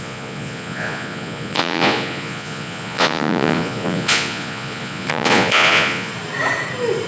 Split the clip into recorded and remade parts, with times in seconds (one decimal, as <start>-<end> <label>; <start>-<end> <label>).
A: 0.0-6.1 remade; 6.1-7.1 recorded

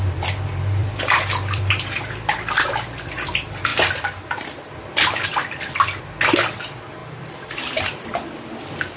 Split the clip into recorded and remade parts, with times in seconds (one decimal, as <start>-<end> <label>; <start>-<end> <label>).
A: 0.0-0.8 recorded; 0.8-1.7 remade; 1.7-7.0 recorded; 7.0-8.1 remade; 8.1-9.0 recorded

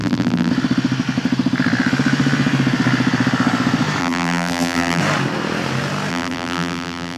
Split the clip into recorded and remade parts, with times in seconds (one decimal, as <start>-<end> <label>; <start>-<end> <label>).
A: 0.0-0.5 remade; 0.5-4.0 recorded; 4.0-5.0 remade; 5.0-6.1 recorded; 6.1-7.2 remade

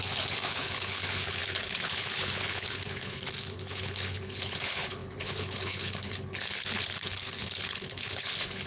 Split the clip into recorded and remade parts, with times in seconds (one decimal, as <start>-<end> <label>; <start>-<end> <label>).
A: 0.0-8.7 remade

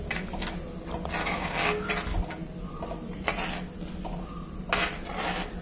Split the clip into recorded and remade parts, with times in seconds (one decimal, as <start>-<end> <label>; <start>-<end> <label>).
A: 0.0-1.2 recorded; 1.2-1.9 remade; 1.9-5.6 recorded